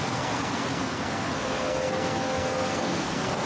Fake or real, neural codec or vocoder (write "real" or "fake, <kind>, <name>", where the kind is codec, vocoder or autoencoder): fake, codec, SNAC